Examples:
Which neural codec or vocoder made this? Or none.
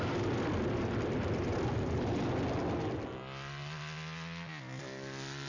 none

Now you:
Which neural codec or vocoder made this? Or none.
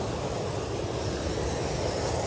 none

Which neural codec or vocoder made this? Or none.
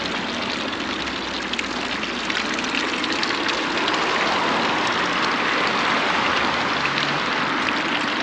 none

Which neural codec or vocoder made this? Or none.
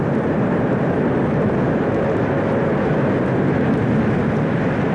none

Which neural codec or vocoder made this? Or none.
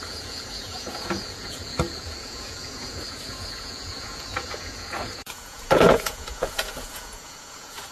vocoder, Vocos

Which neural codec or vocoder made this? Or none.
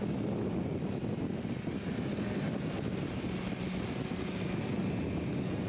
none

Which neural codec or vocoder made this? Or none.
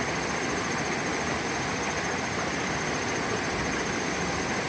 none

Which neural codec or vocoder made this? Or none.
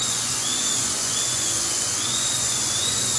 vocoder, Vocos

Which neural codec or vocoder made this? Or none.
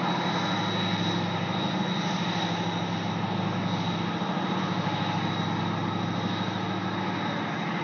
none